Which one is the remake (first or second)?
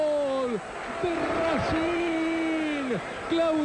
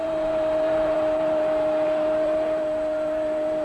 second